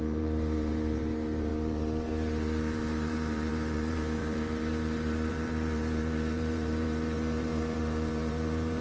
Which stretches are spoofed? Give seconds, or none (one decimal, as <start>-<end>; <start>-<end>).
0.0-8.8